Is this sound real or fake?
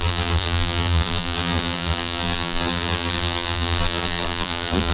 fake